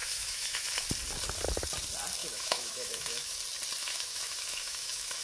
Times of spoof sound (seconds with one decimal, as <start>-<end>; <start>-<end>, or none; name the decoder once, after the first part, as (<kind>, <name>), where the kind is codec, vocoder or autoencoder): 0.0-0.9 (autoencoder, DAC-VAE); 2.2-3.4; 3.8-5.2